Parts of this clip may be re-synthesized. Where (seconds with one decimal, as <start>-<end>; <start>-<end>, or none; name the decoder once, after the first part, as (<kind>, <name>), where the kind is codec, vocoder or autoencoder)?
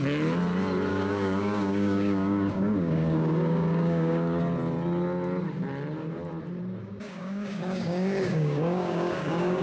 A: 0.9-4.4 (codec, DAC); 6.8-9.6